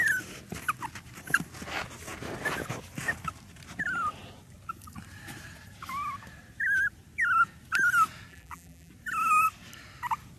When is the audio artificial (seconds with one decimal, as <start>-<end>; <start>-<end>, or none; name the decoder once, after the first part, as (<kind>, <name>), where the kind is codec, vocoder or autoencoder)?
8.3-8.9 (vocoder, BigVGAN v2)